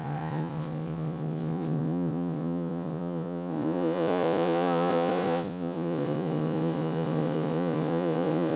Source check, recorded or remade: remade